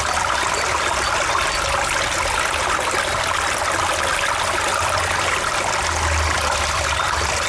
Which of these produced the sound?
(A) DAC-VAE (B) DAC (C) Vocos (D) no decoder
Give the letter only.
D